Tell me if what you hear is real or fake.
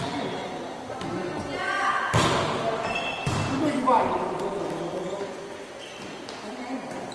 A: real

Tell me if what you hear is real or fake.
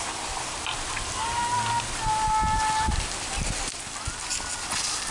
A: real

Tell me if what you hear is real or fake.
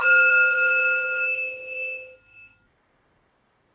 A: fake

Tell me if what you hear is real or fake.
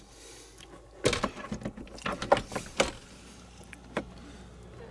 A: real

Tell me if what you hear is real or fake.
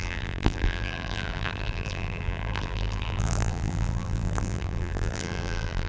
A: fake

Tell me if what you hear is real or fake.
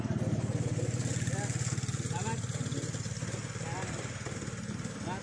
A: real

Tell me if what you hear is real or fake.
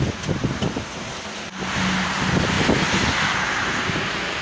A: real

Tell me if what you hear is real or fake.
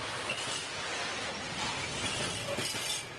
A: real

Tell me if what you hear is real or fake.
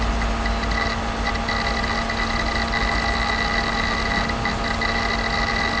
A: real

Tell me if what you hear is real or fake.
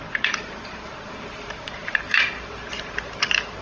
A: fake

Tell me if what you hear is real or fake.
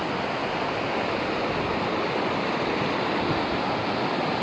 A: real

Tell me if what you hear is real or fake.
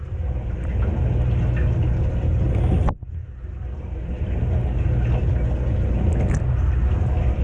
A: real